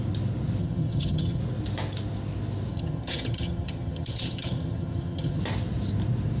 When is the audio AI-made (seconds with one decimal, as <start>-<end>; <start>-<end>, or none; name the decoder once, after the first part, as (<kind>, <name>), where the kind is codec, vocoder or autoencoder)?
0.6-1.4 (vocoder, HiFi-GAN); 2.7-5.4